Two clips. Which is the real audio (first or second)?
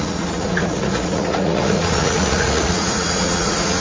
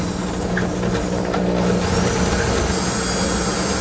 second